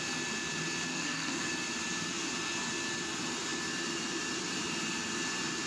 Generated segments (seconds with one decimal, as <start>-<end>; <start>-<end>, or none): 0.9-1.5